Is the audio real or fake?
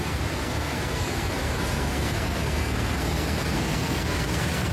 fake